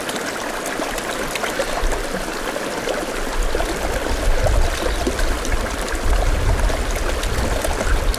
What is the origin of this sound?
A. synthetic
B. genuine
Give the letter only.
B